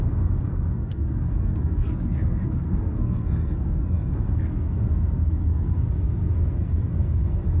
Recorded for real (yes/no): no